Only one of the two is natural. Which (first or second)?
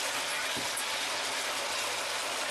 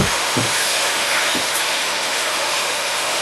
first